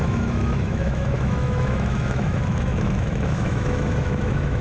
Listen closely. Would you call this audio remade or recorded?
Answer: remade